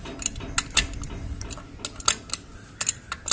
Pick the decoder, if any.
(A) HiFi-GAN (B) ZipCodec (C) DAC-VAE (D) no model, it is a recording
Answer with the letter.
D